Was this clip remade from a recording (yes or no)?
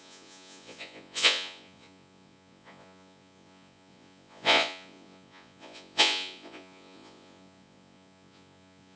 yes